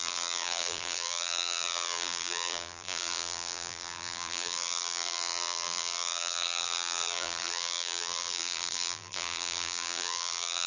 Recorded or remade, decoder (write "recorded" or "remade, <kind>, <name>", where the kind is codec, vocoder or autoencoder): remade, vocoder, BigVGAN v2